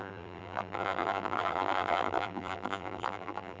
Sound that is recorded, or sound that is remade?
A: remade